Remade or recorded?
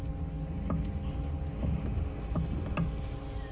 recorded